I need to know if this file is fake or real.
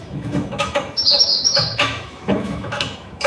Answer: fake